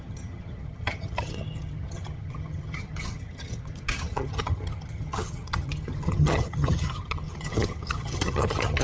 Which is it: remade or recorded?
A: remade